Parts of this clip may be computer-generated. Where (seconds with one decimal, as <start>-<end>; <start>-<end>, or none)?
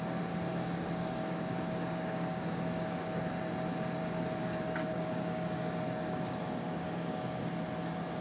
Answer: 0.5-3.5; 4.0-7.4